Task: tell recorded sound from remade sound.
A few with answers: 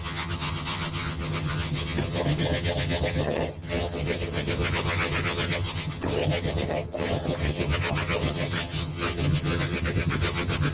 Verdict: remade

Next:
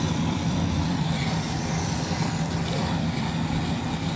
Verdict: recorded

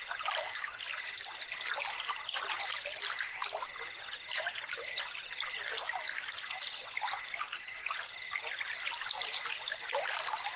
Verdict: recorded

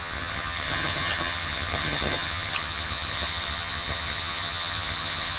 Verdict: remade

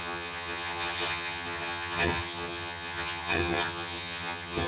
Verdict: remade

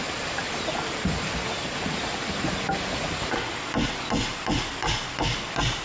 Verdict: recorded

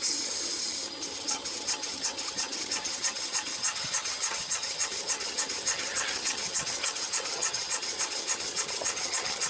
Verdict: remade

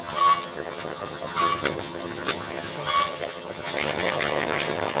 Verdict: remade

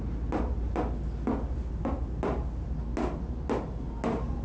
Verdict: recorded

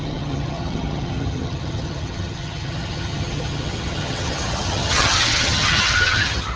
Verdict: remade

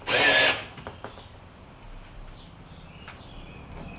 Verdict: recorded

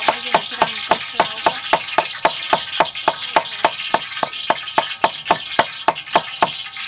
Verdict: recorded